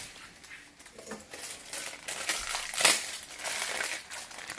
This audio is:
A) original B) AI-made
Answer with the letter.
A